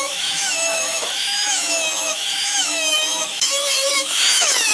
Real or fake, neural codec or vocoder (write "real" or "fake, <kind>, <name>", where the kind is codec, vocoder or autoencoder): fake, autoencoder, DAC-VAE